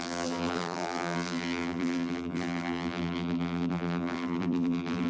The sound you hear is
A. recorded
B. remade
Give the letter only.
B